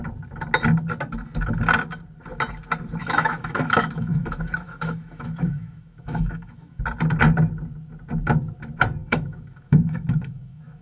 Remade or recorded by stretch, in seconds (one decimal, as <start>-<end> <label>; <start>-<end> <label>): 0.0-3.0 recorded; 3.0-6.8 remade; 6.8-9.0 recorded; 9.0-10.8 remade